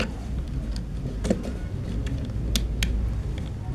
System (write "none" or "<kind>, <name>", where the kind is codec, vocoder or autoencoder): none